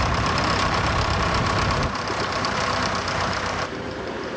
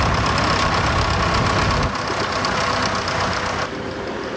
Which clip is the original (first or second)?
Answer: second